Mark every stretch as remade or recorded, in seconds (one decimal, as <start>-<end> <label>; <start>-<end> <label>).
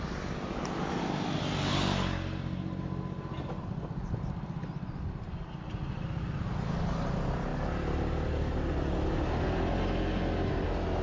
0.0-11.0 recorded